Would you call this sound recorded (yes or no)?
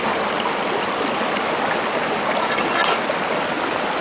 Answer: yes